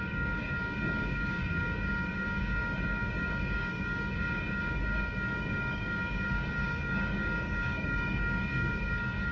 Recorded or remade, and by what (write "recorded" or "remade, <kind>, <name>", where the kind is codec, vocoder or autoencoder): remade, codec, DAC